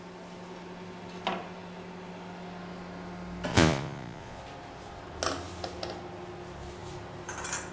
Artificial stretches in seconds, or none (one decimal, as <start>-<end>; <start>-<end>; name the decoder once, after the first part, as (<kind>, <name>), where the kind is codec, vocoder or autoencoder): 3.5-4.4 (vocoder, Vocos)